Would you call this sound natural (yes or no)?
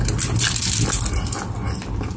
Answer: yes